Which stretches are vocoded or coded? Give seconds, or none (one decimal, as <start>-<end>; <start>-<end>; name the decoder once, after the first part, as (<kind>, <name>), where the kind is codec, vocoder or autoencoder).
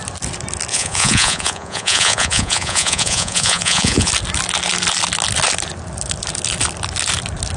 0.7-4.1 (vocoder, Vocos)